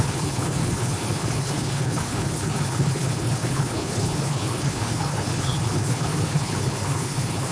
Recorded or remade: remade